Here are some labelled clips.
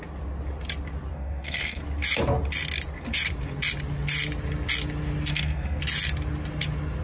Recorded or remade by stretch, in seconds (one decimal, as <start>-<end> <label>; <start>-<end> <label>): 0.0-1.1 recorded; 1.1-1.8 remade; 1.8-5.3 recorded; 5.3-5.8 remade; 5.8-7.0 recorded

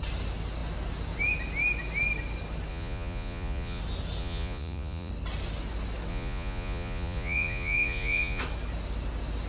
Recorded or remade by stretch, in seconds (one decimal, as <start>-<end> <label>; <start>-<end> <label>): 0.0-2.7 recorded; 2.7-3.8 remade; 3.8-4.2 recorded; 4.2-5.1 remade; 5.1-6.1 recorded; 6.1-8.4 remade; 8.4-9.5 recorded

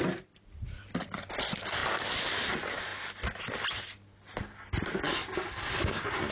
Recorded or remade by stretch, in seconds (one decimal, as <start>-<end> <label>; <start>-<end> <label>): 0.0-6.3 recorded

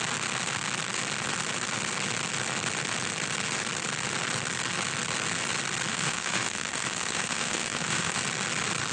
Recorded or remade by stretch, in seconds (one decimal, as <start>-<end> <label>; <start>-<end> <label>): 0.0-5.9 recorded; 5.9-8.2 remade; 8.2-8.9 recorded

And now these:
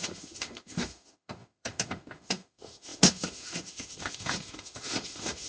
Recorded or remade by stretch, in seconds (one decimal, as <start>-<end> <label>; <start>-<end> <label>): 0.0-5.5 remade

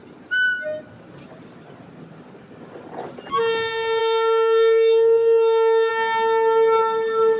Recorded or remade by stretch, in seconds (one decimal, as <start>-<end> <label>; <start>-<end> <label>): 0.0-4.0 recorded; 4.0-5.9 remade; 5.9-7.4 recorded

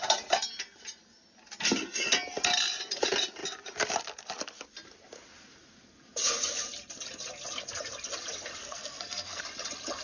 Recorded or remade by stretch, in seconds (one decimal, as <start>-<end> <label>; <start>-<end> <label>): 0.0-8.6 recorded; 8.6-9.4 remade; 9.4-10.0 recorded

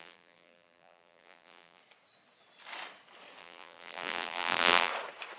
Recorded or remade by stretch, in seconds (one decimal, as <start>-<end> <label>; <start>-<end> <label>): 0.0-1.8 remade; 1.8-3.4 recorded; 3.4-4.9 remade; 4.9-5.4 recorded